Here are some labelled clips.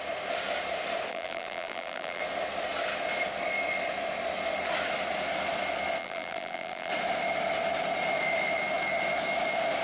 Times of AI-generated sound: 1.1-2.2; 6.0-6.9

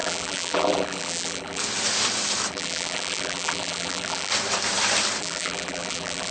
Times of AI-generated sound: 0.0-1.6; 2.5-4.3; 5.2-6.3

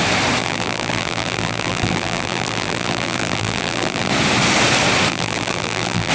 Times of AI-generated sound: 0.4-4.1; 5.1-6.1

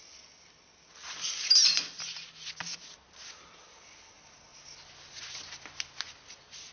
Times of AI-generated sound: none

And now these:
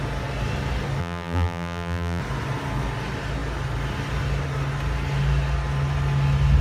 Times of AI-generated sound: 1.0-2.2

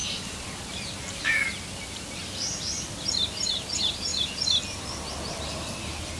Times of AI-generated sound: none

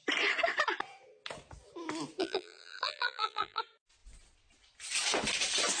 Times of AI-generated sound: 2.2-3.6

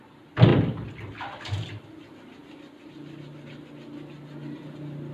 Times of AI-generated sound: 2.4-3.2